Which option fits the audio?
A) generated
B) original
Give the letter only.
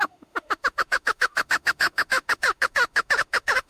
A